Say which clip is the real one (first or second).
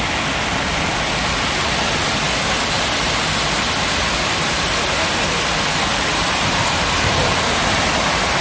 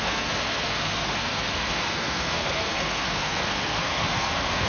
first